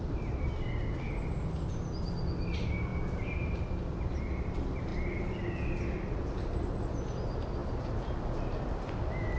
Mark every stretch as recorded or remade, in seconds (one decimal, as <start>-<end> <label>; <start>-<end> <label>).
0.0-9.4 recorded